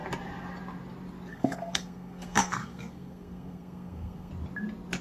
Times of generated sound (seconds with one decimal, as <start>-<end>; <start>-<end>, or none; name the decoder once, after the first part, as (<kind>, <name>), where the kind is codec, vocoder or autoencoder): 1.3-4.3 (codec, SNAC)

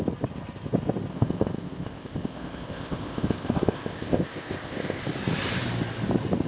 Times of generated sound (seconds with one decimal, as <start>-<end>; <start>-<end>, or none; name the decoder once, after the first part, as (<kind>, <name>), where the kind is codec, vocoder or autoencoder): 1.1-5.0 (codec, ZipCodec)

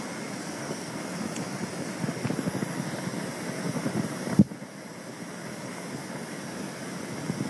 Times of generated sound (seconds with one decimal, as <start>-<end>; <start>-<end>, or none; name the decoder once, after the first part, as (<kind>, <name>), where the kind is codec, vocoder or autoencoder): 0.4-1.0 (codec, SNAC)

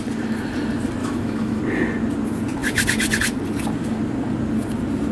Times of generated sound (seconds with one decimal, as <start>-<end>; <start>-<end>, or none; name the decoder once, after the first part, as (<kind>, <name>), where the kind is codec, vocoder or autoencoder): 1.0-1.6 (autoencoder, DAC-VAE)

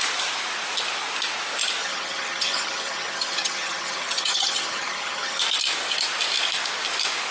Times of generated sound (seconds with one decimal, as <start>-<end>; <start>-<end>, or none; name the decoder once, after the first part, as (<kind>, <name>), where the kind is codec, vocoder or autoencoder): 1.8-5.4 (vocoder, HiFi-GAN)